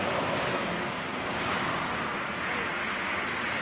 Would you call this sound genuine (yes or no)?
yes